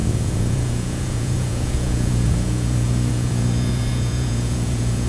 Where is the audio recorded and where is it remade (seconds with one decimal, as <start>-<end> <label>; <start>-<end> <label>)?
0.0-5.1 remade